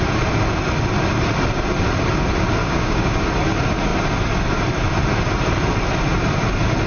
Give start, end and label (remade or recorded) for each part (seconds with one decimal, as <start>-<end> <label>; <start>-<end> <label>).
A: 0.0-2.6 recorded; 2.6-3.2 remade; 3.2-6.9 recorded